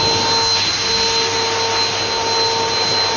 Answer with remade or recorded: recorded